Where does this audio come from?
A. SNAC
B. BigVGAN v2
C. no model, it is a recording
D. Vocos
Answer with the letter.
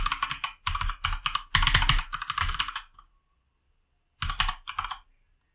C